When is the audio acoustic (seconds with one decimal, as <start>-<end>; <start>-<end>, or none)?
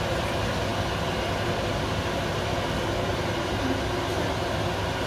0.0-5.1